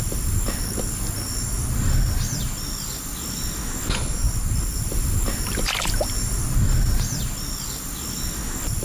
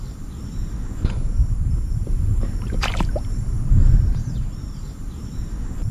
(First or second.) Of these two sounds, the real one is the first